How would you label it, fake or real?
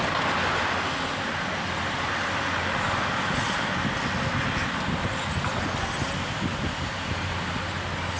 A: real